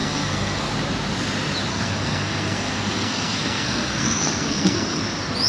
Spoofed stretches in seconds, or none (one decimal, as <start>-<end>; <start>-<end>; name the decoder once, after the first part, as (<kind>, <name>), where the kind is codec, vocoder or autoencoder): 0.0-0.6 (codec, SNAC); 1.7-5.0